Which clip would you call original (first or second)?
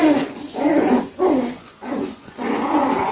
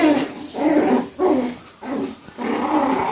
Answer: second